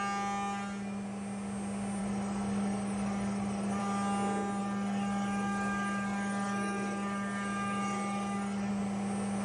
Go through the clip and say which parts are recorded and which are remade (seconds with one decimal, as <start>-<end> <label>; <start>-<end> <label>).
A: 0.0-2.0 recorded; 2.0-3.8 remade; 3.8-4.6 recorded; 4.6-8.7 remade; 8.7-9.4 recorded